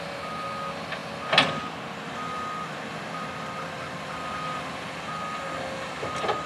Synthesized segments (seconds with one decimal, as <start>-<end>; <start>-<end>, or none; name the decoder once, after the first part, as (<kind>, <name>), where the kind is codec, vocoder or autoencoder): none